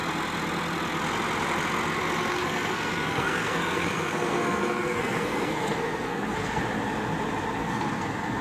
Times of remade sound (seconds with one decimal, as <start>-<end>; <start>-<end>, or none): 2.3-6.6; 7.6-8.4